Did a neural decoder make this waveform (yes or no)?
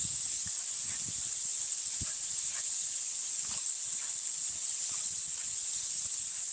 no